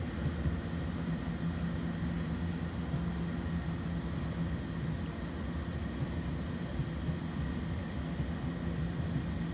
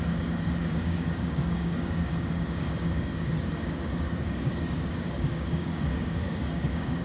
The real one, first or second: first